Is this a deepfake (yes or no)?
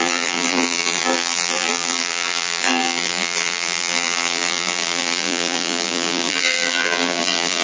yes